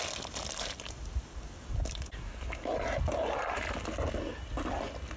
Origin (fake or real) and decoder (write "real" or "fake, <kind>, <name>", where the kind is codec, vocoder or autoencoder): real